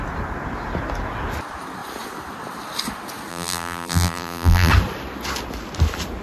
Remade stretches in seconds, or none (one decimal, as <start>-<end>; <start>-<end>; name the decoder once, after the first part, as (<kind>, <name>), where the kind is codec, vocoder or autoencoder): 3.3-4.7 (vocoder, BigVGAN v2)

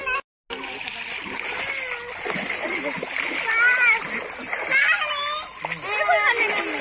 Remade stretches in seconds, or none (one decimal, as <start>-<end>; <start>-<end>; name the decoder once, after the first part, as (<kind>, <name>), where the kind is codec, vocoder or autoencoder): none